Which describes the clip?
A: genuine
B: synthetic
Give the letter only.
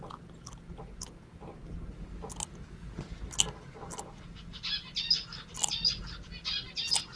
A